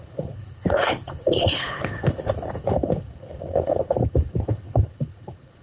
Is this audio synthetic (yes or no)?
yes